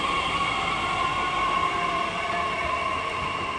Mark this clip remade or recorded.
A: recorded